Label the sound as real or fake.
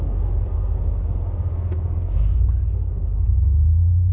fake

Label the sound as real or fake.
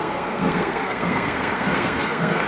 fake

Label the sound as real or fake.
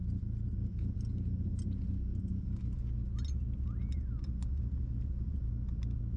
real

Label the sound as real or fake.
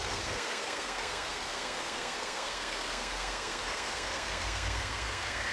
fake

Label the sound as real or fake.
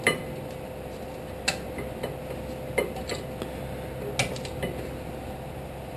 real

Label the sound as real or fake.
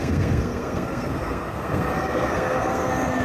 fake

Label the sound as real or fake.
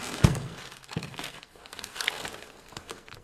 fake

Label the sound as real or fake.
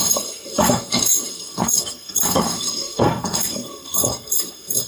fake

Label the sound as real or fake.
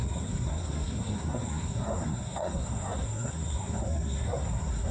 fake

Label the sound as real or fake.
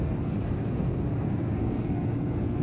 fake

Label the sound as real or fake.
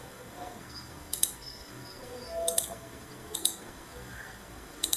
fake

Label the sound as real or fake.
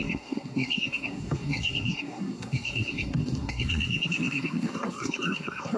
fake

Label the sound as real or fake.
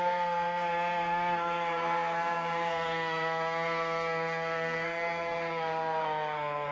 fake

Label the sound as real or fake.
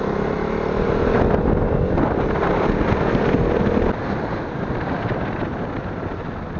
real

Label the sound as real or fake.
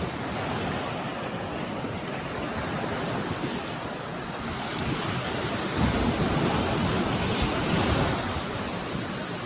real